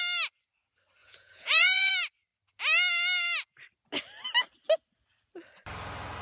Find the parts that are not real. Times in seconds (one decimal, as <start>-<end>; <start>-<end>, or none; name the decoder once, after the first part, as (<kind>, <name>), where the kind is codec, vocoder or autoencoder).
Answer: 1.0-1.9 (vocoder, Vocos)

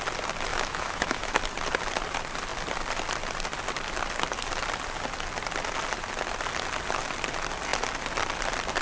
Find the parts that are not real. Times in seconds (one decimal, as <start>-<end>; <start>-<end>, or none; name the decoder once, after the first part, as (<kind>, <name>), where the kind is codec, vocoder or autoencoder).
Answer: 0.5-1.4 (autoencoder, DAC-VAE)

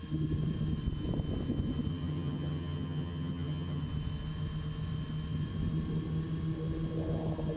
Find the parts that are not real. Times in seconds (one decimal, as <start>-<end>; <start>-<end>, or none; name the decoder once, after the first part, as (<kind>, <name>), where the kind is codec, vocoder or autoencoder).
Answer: 1.9-3.8 (vocoder, HiFi-GAN)

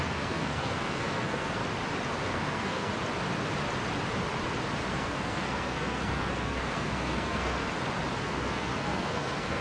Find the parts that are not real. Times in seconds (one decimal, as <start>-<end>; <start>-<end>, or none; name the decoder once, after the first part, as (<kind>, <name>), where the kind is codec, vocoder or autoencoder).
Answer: 0.0-1.6 (codec, SNAC); 2.2-2.9; 4.9-7.6; 8.2-9.6

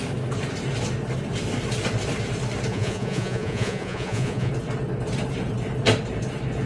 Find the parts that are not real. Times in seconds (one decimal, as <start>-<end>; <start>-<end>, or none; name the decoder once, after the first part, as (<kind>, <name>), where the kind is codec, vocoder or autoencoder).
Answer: 2.7-4.5 (vocoder, Vocos)

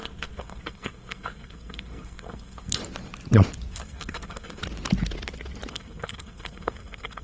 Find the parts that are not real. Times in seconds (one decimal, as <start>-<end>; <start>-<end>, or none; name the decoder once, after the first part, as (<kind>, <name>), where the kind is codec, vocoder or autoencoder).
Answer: 0.0-2.8 (codec, SNAC); 3.7-4.6; 5.7-7.2

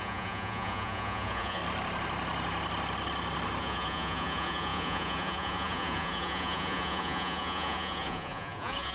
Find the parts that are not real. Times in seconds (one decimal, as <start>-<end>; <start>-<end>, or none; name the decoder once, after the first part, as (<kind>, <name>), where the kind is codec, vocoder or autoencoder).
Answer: 0.0-1.6 (vocoder, Vocos); 3.6-8.9

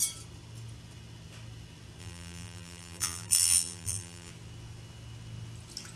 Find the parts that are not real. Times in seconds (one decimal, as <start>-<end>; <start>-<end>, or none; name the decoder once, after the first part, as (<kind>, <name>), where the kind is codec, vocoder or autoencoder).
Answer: 2.0-4.3 (vocoder, BigVGAN v2)